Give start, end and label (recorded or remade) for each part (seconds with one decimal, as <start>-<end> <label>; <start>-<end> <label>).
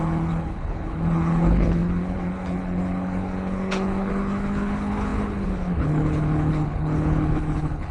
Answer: 0.0-7.9 remade